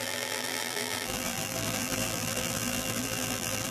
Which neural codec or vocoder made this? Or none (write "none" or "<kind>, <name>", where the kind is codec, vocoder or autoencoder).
vocoder, BigVGAN v2